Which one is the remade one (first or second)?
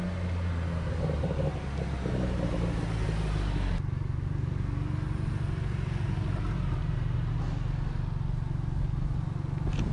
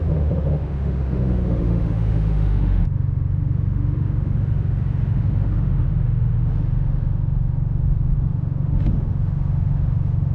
second